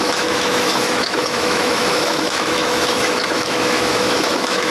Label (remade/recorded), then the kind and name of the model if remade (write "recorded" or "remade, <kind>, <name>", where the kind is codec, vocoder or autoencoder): remade, autoencoder, DAC-VAE